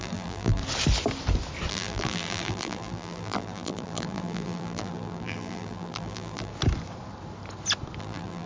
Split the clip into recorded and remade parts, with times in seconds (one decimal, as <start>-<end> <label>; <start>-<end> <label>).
0.0-0.6 remade; 0.6-1.7 recorded; 1.7-6.5 remade; 6.5-8.0 recorded; 8.0-8.5 remade